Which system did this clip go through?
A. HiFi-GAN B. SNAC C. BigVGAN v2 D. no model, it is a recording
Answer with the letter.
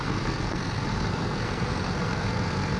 B